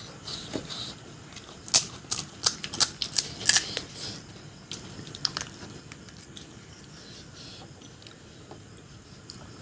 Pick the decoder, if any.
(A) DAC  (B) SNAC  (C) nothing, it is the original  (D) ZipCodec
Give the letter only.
C